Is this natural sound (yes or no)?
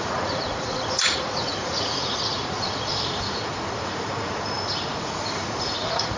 no